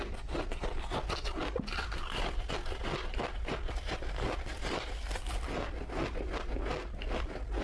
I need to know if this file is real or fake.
real